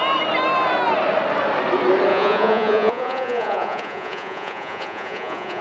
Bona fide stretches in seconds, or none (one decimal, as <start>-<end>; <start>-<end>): 0.0-2.1